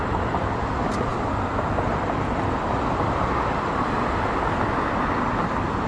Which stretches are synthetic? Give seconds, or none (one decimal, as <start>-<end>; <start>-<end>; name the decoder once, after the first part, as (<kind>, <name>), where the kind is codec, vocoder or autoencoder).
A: none